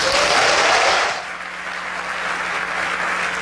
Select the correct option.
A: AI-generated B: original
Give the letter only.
B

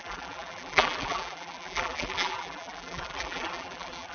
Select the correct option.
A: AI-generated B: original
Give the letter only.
A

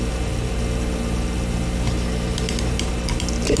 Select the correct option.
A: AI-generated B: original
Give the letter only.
B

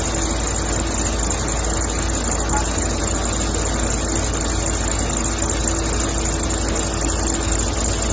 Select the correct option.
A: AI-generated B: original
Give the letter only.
B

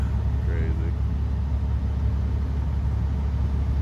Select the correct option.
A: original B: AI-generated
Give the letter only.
A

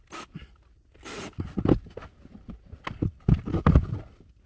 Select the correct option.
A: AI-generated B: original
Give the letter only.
B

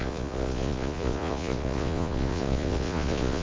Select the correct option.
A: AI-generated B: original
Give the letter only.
A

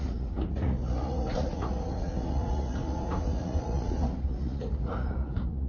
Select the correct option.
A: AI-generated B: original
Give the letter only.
A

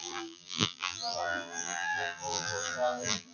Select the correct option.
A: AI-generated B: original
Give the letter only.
A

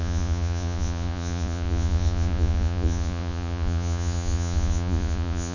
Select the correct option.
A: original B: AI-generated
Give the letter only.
B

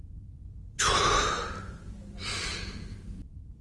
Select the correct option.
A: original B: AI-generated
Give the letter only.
B